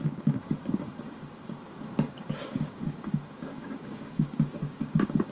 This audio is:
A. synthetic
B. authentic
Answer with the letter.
A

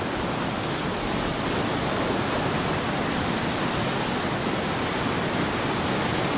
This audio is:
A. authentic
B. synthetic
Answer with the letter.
A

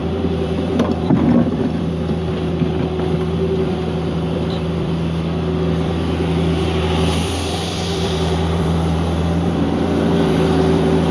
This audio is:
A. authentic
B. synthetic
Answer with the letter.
B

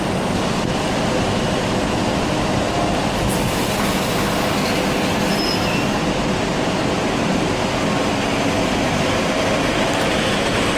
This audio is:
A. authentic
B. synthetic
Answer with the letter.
A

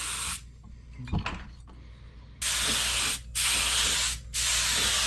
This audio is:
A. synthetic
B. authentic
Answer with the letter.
B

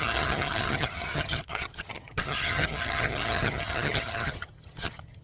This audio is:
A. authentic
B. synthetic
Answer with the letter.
B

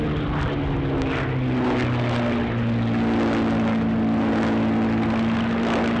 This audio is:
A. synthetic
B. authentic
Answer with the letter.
B